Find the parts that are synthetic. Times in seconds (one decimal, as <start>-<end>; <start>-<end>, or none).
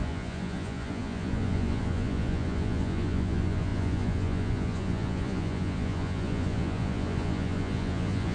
0.0-8.3